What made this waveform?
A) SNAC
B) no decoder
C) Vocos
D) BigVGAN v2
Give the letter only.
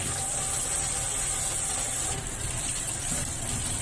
D